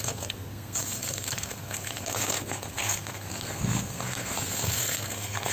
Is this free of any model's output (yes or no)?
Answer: no